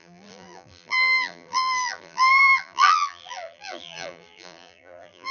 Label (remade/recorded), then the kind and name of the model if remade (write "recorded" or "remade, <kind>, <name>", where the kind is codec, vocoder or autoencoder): remade, vocoder, BigVGAN v2